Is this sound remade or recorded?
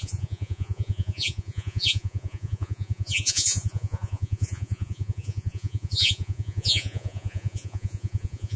remade